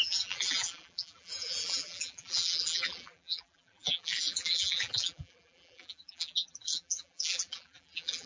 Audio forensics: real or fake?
fake